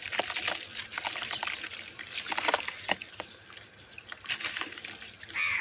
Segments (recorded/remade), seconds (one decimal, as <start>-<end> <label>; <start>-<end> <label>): 0.0-5.6 recorded